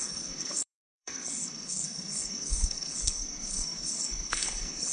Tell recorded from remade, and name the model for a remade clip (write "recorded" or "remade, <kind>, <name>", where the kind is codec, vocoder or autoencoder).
remade, codec, SNAC